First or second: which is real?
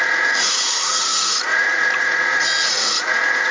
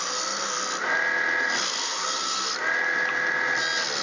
second